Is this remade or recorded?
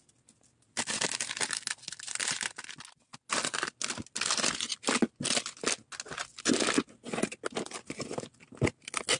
recorded